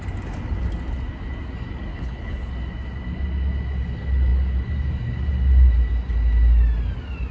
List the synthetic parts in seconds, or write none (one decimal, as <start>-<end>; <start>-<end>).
1.9-2.5